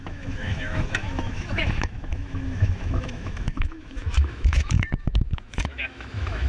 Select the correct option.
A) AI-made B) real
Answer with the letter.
A